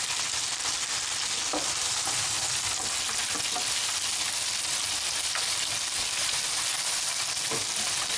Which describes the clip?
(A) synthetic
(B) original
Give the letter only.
B